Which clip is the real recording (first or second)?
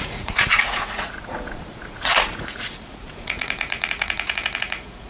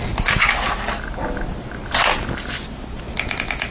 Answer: second